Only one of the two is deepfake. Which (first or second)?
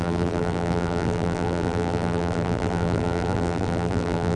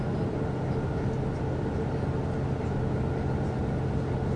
first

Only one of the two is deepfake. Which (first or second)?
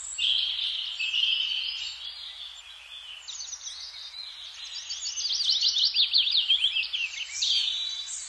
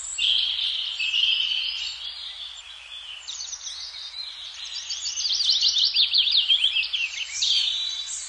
second